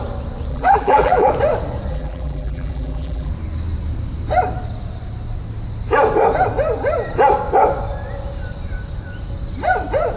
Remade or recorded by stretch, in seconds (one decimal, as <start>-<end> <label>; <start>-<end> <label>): 0.0-0.5 recorded; 0.5-1.3 remade; 1.3-1.9 recorded; 1.9-3.3 remade; 3.3-10.2 recorded